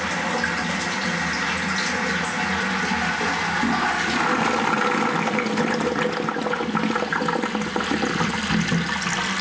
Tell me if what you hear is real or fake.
real